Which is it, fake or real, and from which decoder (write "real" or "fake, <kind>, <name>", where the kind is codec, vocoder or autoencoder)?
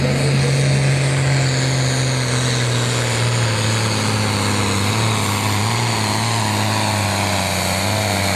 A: real